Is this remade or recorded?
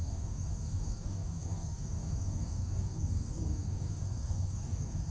remade